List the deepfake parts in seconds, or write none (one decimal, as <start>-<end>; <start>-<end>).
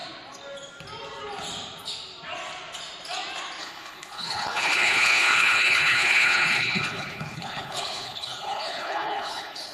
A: 3.6-9.7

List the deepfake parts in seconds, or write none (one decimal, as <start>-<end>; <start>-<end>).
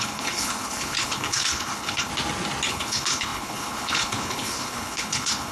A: 0.0-2.1; 2.7-5.5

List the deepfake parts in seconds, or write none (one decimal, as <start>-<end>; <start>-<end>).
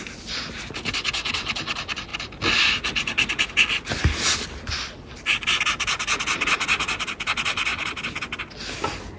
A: none